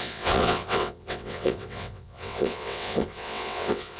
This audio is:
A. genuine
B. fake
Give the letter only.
B